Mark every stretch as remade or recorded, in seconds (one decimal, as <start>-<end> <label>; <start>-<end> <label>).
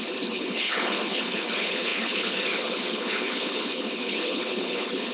0.0-5.1 remade